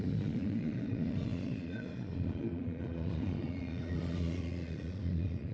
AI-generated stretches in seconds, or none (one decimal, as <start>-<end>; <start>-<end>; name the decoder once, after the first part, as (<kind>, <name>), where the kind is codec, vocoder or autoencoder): 0.0-5.5 (vocoder, Vocos)